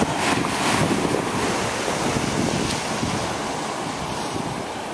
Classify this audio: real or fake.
real